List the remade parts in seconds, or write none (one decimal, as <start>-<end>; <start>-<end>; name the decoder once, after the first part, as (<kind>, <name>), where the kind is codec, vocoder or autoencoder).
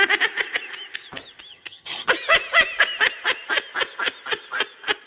1.5-2.1 (vocoder, HiFi-GAN)